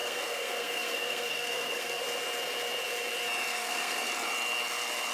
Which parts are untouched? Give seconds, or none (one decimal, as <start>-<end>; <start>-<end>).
2.0-3.5; 4.1-5.1